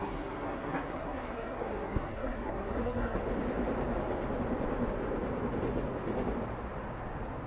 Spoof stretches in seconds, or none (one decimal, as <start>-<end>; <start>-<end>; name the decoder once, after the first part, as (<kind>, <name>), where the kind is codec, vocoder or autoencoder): 0.0-3.2 (codec, SNAC)